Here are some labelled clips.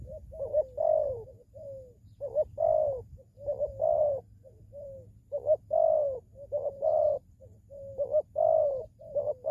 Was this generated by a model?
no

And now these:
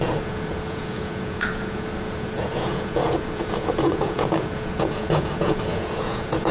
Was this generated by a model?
yes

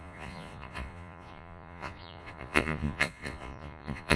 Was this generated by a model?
yes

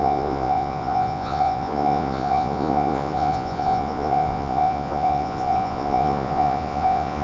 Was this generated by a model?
yes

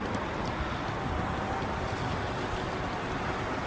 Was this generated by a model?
no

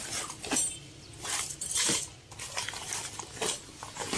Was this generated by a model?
no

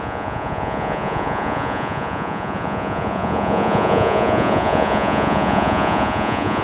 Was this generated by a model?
yes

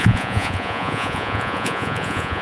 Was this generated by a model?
yes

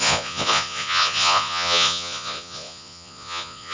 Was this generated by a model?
yes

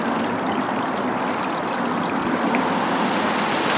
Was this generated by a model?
no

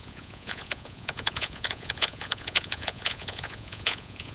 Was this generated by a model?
yes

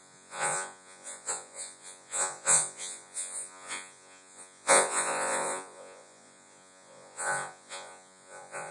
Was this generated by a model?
yes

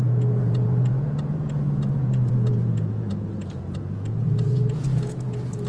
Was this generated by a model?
yes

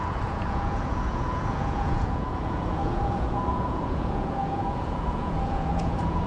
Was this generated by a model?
yes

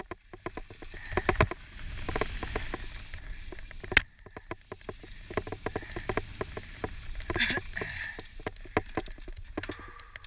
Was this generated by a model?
no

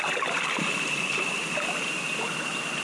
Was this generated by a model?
no